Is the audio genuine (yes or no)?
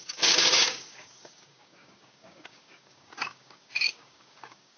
no